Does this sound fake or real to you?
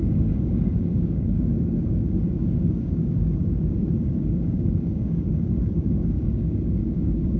fake